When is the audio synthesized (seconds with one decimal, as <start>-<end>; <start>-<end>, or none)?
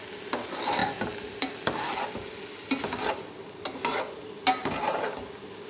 none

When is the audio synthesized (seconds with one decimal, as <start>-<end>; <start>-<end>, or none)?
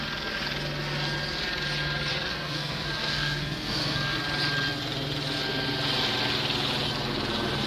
2.1-4.2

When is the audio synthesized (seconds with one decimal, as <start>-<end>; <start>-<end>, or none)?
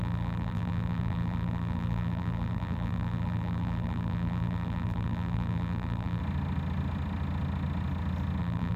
0.0-6.2; 8.4-8.8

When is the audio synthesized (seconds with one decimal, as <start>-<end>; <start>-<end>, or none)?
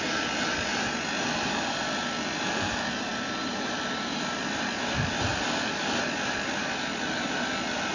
3.1-3.9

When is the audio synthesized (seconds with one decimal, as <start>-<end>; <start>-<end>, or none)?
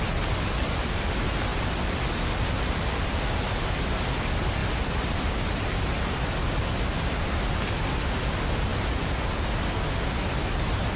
none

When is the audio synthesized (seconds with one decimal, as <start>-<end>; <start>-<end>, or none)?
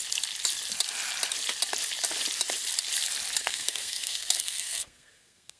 3.4-5.6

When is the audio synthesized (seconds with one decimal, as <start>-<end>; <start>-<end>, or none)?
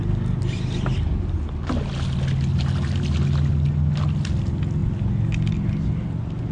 none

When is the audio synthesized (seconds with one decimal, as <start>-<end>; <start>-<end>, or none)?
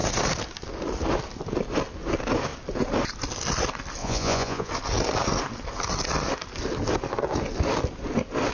4.0-4.7